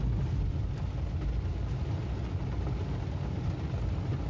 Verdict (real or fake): real